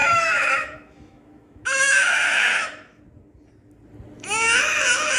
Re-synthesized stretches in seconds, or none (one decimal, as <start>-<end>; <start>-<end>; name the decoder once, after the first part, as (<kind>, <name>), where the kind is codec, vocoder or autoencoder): 0.0-3.0 (autoencoder, DAC-VAE)